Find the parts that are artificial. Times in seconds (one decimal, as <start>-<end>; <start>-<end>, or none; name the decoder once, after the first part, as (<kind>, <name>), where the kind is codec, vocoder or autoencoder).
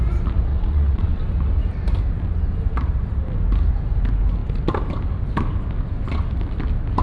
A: 0.5-1.2 (vocoder, WaveNeXt)